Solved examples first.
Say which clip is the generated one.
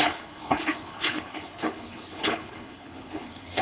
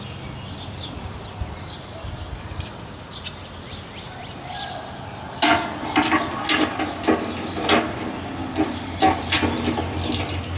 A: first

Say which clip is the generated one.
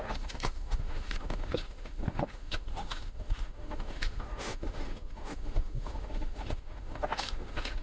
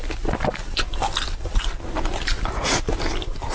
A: first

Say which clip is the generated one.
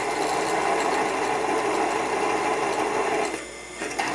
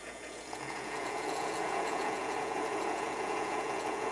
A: second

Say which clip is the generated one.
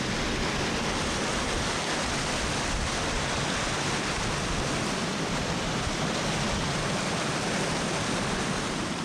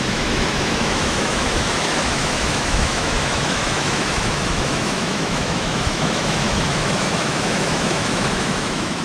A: second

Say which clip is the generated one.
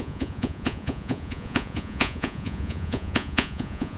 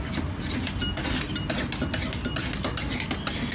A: first